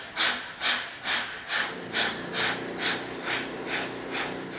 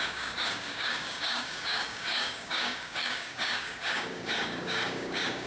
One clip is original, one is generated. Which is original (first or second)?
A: first